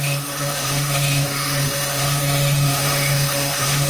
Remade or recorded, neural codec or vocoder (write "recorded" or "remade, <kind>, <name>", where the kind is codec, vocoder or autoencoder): remade, autoencoder, DAC-VAE